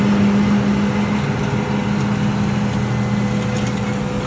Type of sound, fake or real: real